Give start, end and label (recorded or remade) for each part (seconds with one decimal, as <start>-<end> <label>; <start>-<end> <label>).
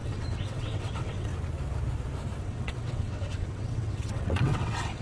0.0-1.3 remade; 1.3-2.4 recorded; 2.4-5.0 remade